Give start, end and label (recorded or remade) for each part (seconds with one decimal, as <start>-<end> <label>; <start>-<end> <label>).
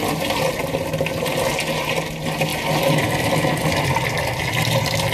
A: 0.0-5.1 recorded